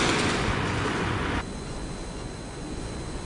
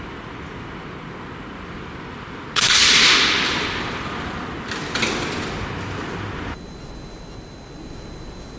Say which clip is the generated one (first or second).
first